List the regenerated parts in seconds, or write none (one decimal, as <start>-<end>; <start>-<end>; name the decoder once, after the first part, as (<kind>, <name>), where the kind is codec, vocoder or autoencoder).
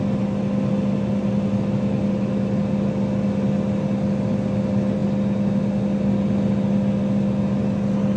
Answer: none